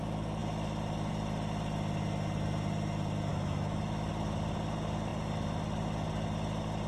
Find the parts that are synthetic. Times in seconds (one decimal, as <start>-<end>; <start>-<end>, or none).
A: 3.3-4.1